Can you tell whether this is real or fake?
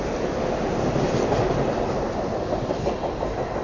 real